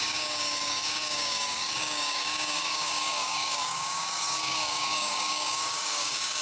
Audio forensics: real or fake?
fake